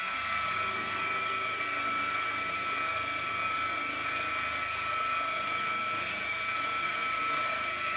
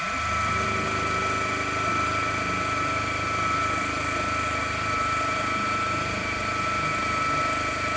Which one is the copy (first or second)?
first